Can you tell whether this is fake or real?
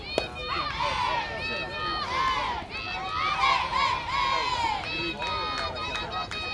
real